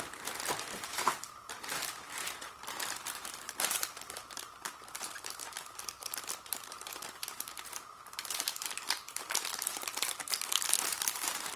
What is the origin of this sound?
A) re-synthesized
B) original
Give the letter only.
A